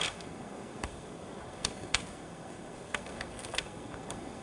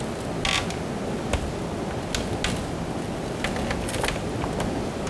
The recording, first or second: second